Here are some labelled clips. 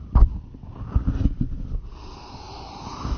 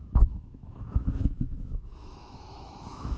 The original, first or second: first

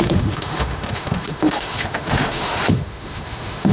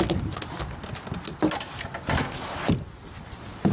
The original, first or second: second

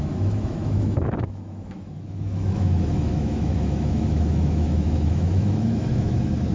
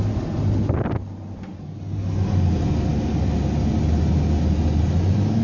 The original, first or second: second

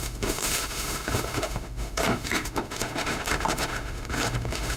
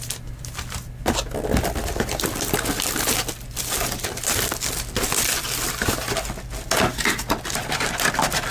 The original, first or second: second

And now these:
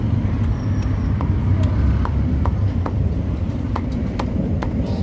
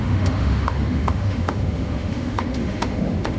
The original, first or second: first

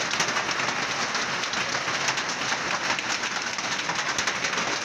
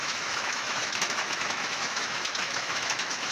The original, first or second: first